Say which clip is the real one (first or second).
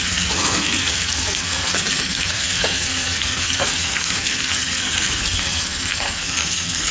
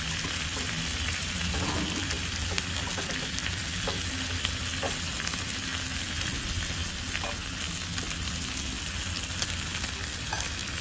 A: second